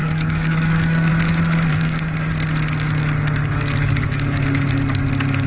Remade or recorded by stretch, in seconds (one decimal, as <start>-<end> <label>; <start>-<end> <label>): 0.0-1.1 remade; 1.1-1.7 recorded; 1.7-2.3 remade; 2.3-3.4 recorded; 3.4-4.4 remade; 4.4-5.5 recorded